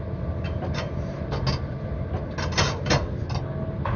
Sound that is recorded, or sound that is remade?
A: recorded